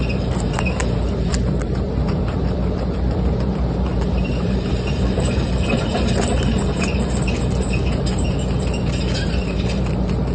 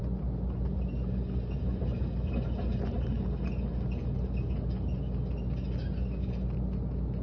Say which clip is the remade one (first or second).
first